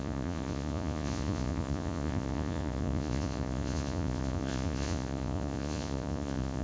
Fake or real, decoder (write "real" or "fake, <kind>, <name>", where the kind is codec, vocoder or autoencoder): fake, vocoder, Vocos